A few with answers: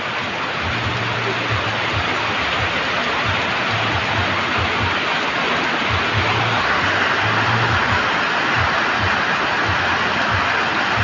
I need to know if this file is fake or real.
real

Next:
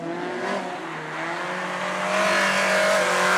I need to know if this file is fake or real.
real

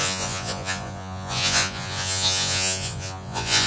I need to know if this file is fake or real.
fake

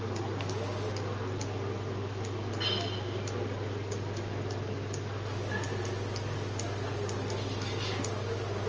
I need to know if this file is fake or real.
real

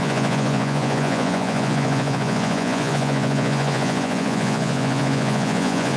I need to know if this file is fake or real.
fake